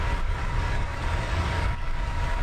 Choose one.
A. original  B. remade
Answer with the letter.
B